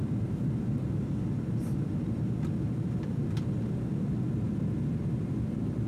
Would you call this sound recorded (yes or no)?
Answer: yes